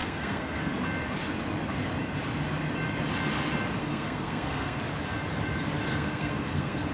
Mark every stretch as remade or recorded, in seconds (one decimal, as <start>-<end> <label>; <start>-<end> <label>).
0.0-0.7 remade; 0.7-3.8 recorded; 3.8-4.8 remade; 4.8-5.9 recorded; 5.9-6.9 remade